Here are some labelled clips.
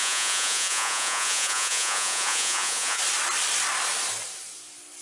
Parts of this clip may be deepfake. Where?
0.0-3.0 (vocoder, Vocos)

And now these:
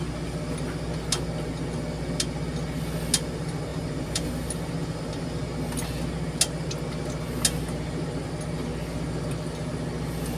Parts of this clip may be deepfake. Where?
3.7-4.3 (vocoder, BigVGAN v2); 4.8-5.4